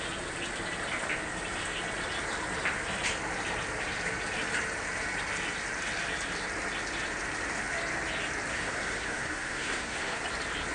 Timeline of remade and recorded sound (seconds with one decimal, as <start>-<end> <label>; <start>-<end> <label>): 0.0-8.5 recorded; 8.5-10.2 remade; 10.2-10.7 recorded